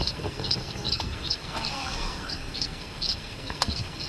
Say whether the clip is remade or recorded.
remade